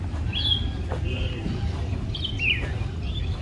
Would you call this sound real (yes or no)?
yes